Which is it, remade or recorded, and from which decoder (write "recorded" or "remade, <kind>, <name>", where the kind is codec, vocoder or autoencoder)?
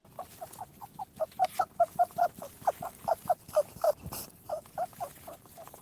recorded